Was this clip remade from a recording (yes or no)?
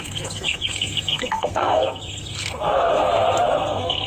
yes